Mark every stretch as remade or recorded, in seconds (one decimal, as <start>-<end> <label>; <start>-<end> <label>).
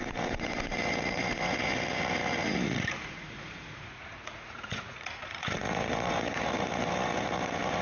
0.0-7.8 remade